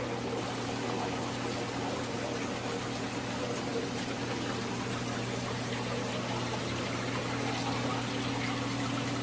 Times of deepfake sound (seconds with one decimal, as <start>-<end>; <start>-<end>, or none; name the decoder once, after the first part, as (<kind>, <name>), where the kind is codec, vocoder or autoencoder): 3.7-5.0 (vocoder, BigVGAN v2)